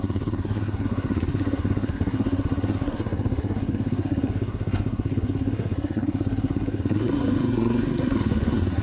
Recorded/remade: remade